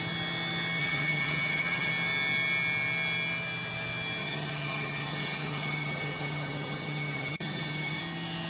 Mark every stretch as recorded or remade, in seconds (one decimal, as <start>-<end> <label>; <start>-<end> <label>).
0.0-0.8 recorded; 0.8-1.9 remade; 1.9-4.2 recorded; 4.2-8.0 remade; 8.0-8.5 recorded